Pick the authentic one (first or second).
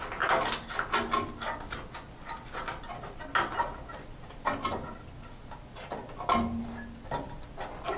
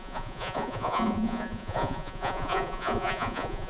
first